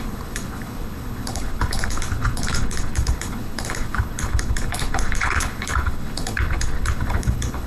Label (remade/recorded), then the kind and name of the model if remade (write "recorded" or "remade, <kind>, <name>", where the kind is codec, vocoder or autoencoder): remade, codec, HILCodec